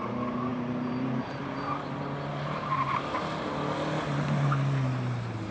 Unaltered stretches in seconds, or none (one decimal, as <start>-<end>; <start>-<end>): 0.0-0.5; 1.4-2.3; 3.2-5.5